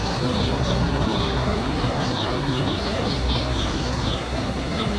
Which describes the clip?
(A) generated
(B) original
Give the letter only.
A